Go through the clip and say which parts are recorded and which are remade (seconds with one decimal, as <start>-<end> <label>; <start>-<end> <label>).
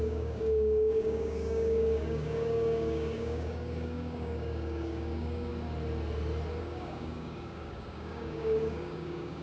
0.0-5.5 remade; 5.5-6.6 recorded; 6.6-9.4 remade